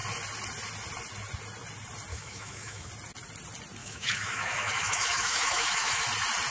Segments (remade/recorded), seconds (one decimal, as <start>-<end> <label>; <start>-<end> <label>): 0.0-2.1 recorded; 2.1-2.9 remade; 2.9-3.8 recorded; 3.8-6.0 remade; 6.0-6.5 recorded